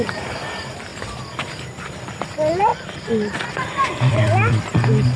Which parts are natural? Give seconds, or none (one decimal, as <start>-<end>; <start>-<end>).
0.9-2.1